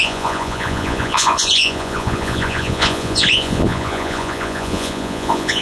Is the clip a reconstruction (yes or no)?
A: yes